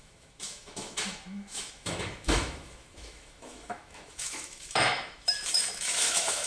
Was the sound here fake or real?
fake